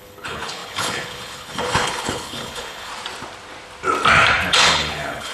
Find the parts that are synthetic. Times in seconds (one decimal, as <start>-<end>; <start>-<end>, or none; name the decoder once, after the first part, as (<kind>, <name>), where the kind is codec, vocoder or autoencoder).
0.0-2.9 (codec, HILCodec); 4.5-5.3